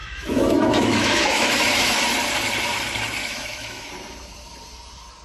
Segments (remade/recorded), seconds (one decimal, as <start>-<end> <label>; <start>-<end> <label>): 0.0-2.0 remade; 2.0-3.2 recorded; 3.2-3.9 remade; 3.9-5.2 recorded